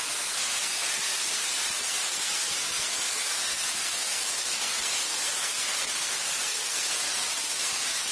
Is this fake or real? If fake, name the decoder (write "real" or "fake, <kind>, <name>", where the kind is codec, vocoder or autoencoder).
fake, codec, SNAC